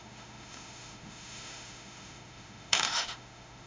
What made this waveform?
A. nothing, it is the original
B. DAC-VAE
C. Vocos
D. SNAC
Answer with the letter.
B